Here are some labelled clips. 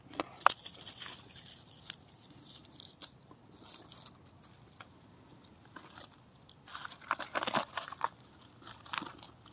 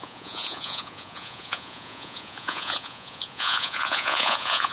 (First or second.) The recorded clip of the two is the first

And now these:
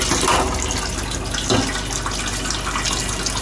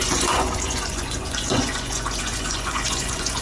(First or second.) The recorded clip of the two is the first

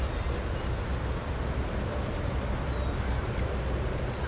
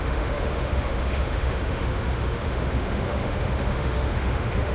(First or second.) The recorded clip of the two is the first